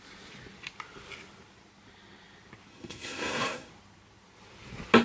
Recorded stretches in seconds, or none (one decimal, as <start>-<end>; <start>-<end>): 0.0-2.7; 3.7-5.0